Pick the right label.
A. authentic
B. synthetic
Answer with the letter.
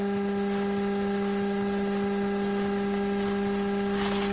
A